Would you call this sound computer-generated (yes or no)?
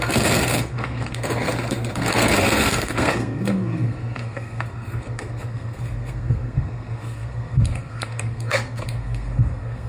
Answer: yes